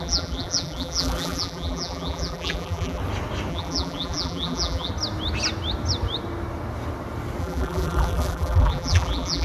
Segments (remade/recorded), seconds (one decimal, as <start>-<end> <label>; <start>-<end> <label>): 0.0-3.0 remade; 3.0-3.5 recorded; 3.5-4.9 remade; 4.9-7.4 recorded; 7.4-9.4 remade